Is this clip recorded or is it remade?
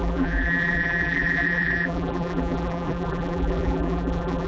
remade